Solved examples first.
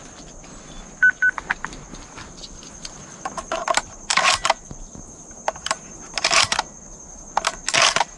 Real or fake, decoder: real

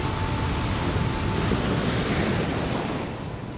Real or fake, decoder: real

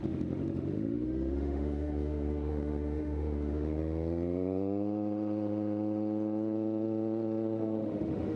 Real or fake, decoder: fake, autoencoder, DAC-VAE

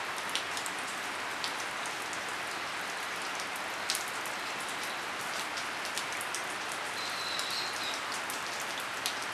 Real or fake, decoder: real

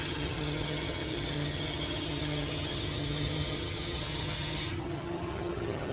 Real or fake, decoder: fake, vocoder, HiFi-GAN